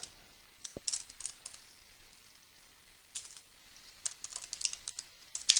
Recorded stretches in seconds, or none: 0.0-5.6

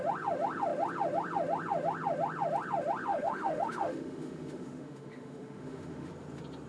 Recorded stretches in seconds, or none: 0.0-3.1; 6.1-6.7

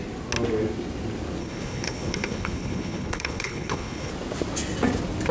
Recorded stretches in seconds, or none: 0.0-1.4; 4.1-5.3